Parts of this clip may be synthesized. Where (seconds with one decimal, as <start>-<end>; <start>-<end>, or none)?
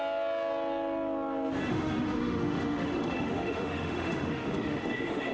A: 1.7-5.3